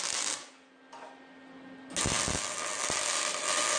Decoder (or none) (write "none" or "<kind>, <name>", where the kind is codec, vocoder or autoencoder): none